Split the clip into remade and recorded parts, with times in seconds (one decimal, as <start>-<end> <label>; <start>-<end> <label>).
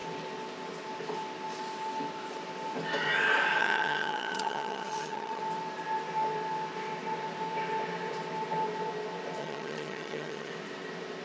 0.0-3.6 recorded; 3.6-5.4 remade; 5.4-9.4 recorded; 9.4-10.5 remade; 10.5-11.2 recorded